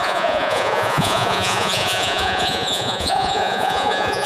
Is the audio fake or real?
fake